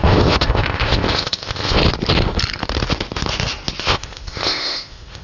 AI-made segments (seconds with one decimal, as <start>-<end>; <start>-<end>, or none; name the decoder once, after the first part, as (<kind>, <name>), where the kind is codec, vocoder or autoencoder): 0.0-1.8 (codec, ZipCodec); 3.8-5.2